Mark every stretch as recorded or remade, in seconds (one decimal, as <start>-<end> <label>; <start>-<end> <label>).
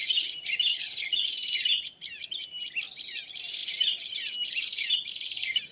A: 0.0-0.7 recorded; 0.7-1.2 remade; 1.2-5.7 recorded